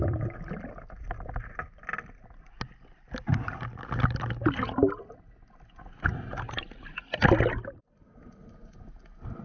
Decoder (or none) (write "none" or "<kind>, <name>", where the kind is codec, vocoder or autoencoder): none